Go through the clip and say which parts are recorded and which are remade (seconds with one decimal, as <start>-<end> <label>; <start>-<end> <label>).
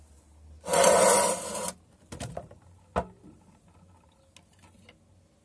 0.0-5.4 recorded